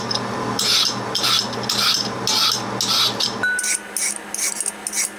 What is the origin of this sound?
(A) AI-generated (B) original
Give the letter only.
B